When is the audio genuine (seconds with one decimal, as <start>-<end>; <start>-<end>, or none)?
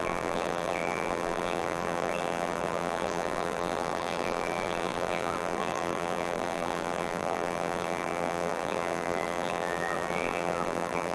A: none